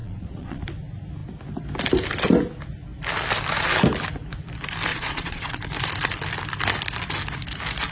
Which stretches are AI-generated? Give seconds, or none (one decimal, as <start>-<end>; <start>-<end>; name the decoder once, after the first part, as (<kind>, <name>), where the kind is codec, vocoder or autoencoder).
0.0-0.6 (vocoder, Vocos); 4.9-5.6